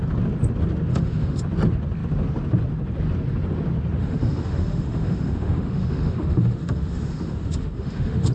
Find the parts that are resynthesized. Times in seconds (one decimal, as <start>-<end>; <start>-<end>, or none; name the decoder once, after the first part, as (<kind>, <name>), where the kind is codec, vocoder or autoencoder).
0.9-1.4 (autoencoder, DAC-VAE); 4.0-8.3